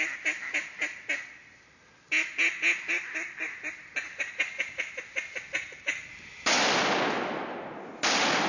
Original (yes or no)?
yes